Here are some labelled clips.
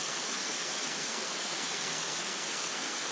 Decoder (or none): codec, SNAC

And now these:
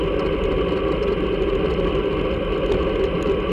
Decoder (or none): none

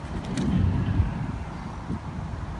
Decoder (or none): none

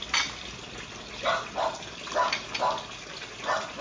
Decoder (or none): none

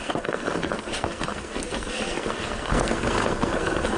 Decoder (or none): codec, SNAC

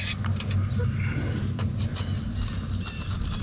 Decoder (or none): none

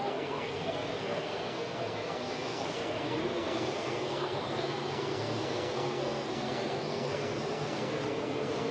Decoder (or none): codec, SNAC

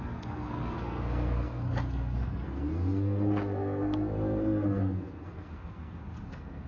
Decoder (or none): codec, SNAC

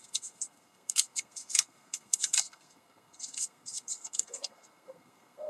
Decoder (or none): codec, SNAC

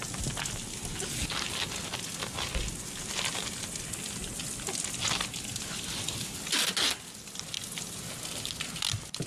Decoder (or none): none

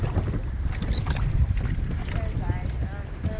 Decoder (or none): none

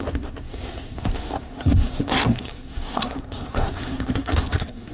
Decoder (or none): codec, SNAC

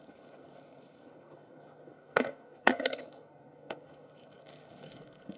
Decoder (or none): codec, SNAC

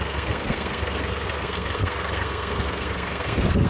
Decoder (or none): codec, SNAC